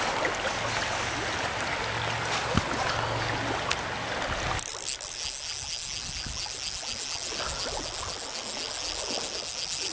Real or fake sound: real